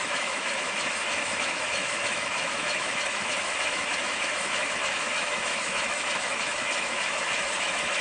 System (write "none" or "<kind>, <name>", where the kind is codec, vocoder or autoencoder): autoencoder, DAC-VAE